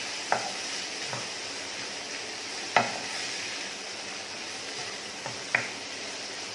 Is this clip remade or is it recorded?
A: remade